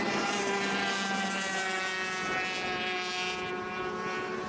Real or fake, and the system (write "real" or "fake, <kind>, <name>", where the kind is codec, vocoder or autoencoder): real